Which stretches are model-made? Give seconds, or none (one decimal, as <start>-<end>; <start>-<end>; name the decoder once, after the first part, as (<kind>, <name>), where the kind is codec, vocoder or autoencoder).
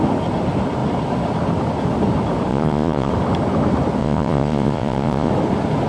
2.5-3.1 (vocoder, Vocos); 4.0-5.3